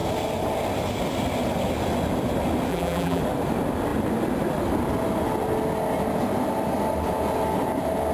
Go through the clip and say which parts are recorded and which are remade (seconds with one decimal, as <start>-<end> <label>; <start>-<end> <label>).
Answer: 0.0-2.7 recorded; 2.7-3.2 remade; 3.2-8.1 recorded